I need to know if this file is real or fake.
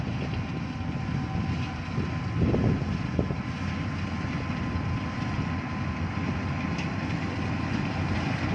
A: real